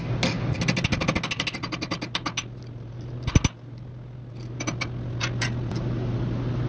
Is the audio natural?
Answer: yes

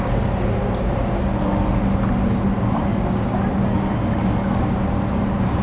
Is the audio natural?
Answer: yes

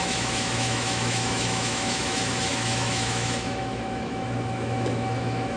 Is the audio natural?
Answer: no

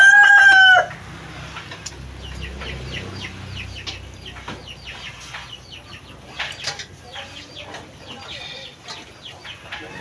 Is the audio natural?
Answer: yes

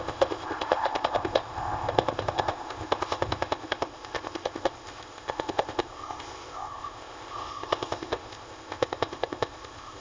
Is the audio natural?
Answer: no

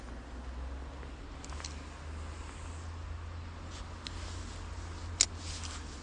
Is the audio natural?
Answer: yes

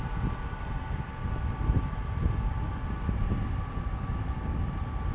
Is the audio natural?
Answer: yes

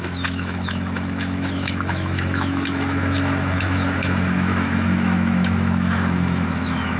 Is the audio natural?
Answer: no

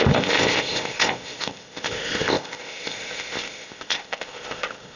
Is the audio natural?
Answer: no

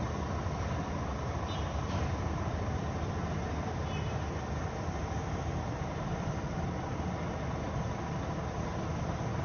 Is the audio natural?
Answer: yes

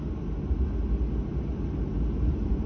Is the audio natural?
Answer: yes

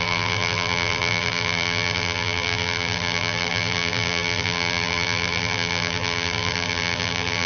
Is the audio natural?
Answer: no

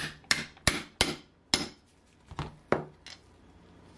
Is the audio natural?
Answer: yes